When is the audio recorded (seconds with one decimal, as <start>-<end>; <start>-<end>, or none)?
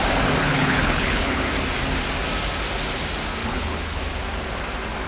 0.0-0.4; 1.5-3.4; 4.0-5.1